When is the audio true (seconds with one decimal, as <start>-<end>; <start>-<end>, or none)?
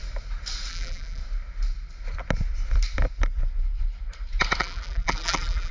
0.0-0.7; 1.2-4.6